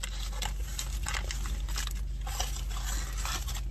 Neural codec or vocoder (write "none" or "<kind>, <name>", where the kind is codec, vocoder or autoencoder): none